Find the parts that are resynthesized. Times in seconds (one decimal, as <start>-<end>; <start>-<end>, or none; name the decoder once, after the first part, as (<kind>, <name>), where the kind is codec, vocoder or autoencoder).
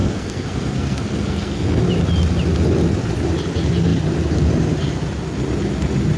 0.0-1.8 (codec, SNAC)